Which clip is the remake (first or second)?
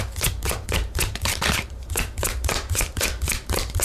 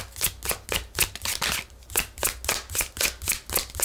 first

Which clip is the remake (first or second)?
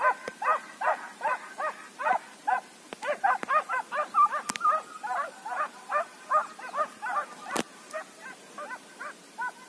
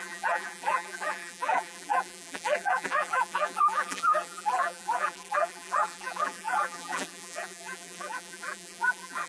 second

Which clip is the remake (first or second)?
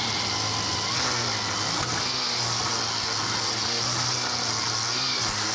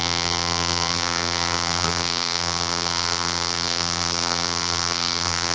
second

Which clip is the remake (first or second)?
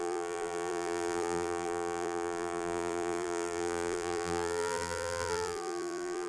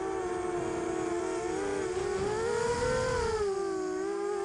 first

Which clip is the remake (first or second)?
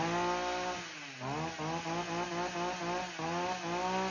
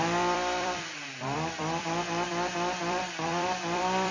second